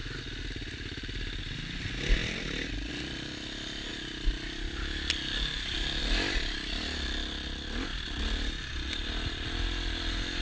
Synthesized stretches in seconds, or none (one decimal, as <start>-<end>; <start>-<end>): none